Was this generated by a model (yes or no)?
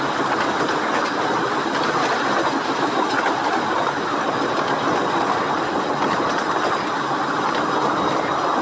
no